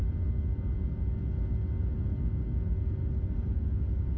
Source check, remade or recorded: recorded